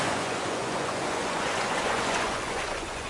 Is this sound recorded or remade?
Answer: remade